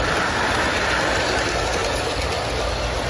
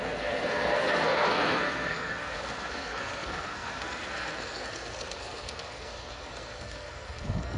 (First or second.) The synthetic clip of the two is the second